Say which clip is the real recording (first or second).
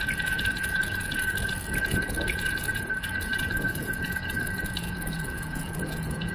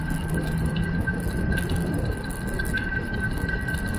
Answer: second